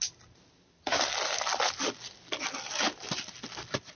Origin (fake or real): real